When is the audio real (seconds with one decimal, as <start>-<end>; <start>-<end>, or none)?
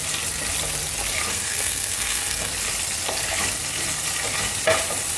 0.0-1.3; 2.5-5.2